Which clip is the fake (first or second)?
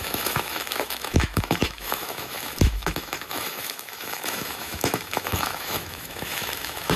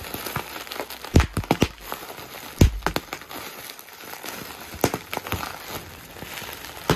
first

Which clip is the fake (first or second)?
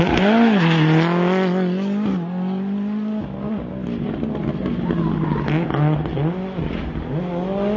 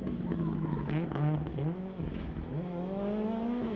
second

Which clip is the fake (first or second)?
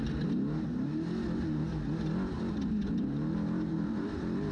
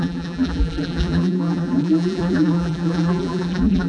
second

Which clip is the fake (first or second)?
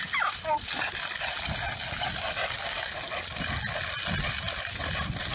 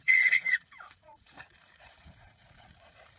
second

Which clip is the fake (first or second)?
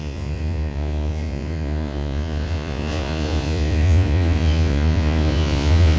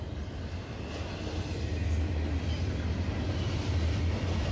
first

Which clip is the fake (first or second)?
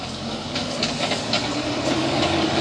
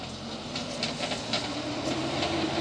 first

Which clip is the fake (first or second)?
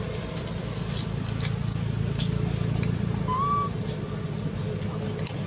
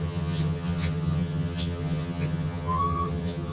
second